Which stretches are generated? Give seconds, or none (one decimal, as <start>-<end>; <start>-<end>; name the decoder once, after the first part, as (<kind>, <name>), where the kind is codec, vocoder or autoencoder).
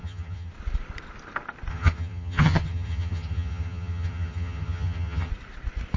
0.0-0.5 (vocoder, HiFi-GAN); 1.7-5.3